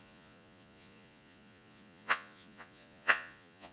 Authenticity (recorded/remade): remade